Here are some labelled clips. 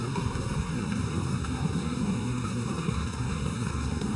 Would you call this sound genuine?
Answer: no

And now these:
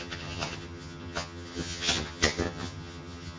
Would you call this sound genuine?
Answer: no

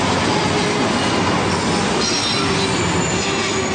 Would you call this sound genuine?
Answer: yes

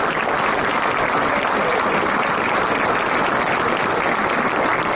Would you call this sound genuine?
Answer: yes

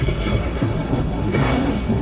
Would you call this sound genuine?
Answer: no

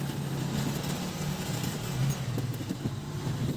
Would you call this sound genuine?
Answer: yes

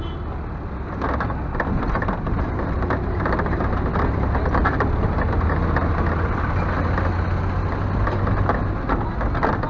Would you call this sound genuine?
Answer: yes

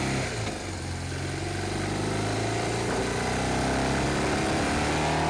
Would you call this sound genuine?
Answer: yes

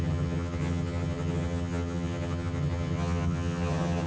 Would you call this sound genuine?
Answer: no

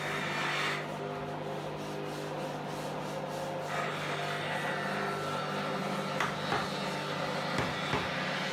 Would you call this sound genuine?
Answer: yes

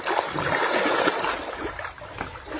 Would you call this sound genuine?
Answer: yes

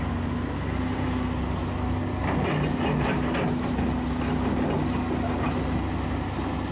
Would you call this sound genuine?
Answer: yes